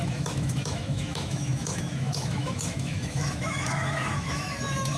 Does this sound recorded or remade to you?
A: remade